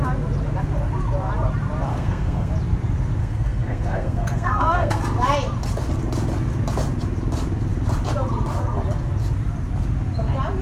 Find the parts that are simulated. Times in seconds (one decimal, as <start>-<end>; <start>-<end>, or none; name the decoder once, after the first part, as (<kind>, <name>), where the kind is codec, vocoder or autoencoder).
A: 1.9-2.5 (codec, SNAC); 3.2-5.0